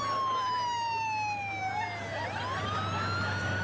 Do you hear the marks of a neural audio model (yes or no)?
no